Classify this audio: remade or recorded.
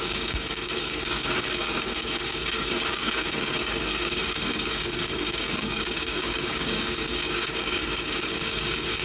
remade